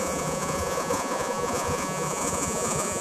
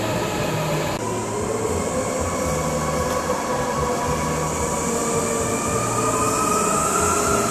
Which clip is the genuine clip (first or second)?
second